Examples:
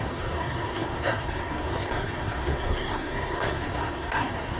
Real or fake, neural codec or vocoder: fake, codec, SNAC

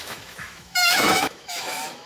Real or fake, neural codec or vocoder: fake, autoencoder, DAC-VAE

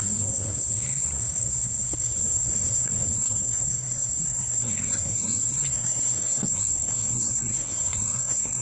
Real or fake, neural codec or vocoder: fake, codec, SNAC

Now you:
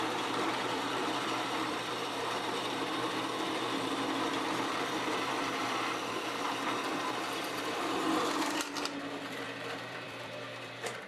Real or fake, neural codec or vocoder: fake, vocoder, BigVGAN v2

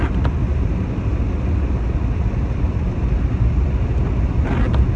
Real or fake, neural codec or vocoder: real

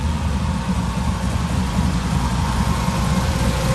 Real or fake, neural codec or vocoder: fake, vocoder, Vocos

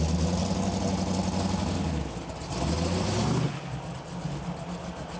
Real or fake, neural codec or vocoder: real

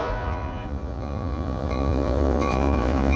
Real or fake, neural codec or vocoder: fake, vocoder, Vocos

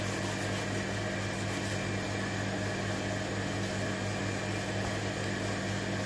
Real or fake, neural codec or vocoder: real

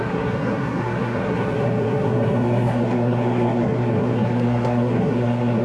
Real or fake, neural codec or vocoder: fake, codec, SNAC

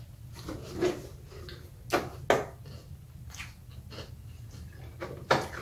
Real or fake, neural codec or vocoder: real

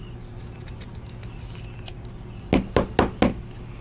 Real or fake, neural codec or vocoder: real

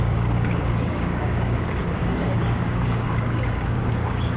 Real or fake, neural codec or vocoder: fake, codec, DAC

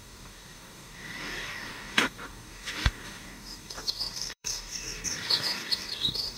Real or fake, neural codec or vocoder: fake, codec, DAC